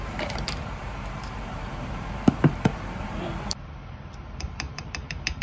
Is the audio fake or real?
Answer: fake